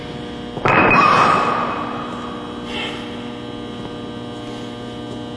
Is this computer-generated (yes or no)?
no